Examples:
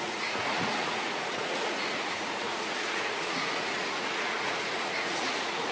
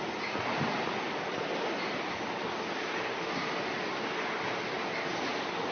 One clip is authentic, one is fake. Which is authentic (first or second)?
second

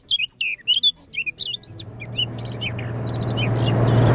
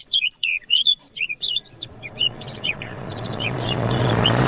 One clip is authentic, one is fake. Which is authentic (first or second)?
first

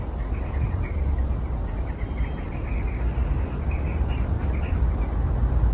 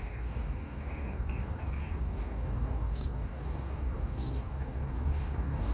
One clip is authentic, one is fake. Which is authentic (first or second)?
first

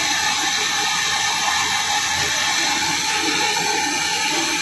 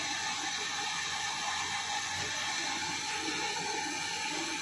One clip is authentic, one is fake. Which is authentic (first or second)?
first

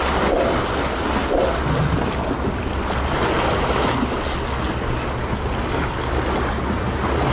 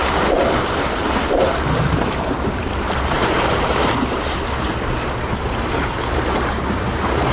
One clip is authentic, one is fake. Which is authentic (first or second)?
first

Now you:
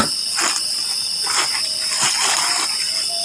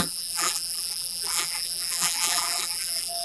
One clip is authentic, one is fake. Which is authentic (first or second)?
first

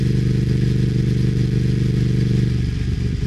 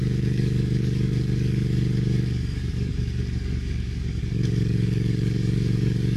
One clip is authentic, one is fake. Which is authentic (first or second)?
first